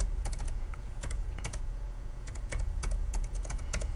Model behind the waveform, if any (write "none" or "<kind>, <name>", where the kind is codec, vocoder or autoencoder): vocoder, Vocos